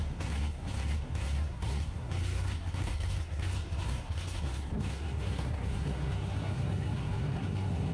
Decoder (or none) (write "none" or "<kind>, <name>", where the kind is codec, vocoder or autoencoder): codec, SNAC